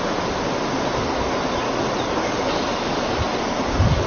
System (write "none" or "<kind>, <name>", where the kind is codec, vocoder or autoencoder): none